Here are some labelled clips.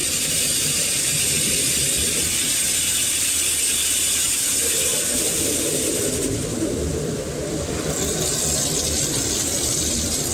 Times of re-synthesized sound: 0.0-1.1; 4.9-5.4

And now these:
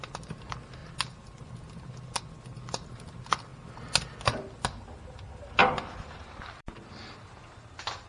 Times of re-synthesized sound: 5.6-8.1

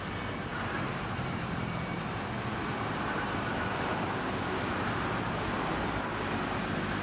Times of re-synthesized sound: none

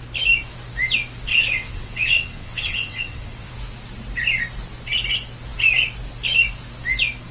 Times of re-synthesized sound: 1.3-3.5

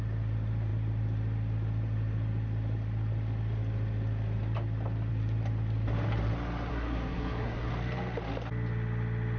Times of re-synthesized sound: 6.7-7.7

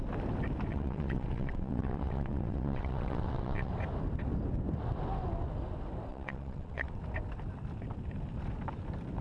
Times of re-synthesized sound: 0.7-3.7; 6.1-7.0

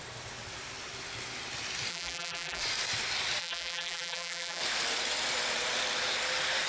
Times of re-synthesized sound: 1.9-2.6; 3.4-4.6

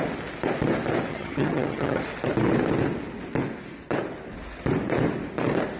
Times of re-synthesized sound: 1.1-2.0